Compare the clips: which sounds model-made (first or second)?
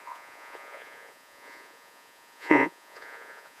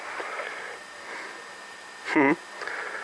first